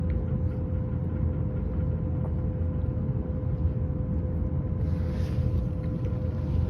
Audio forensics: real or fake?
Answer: real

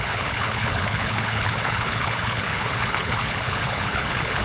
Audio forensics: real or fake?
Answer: fake